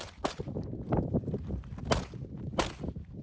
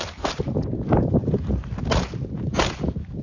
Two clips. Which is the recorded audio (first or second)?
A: second